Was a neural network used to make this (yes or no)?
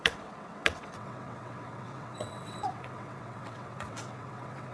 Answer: yes